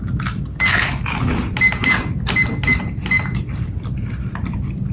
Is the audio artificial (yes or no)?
no